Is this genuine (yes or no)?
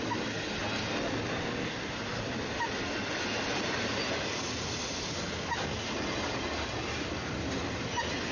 yes